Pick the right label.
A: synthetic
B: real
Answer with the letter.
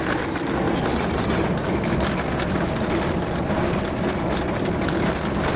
B